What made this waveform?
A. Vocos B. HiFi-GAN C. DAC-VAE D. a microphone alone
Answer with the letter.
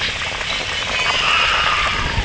D